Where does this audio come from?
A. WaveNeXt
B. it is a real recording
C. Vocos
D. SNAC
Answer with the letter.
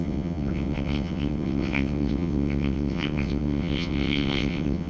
A